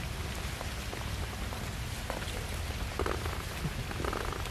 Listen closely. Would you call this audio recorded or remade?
recorded